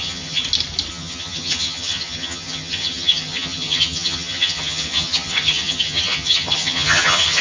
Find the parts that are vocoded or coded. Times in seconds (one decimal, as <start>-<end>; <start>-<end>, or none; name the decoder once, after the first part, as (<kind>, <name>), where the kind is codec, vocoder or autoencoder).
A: 0.0-0.4 (vocoder, HiFi-GAN); 0.9-7.4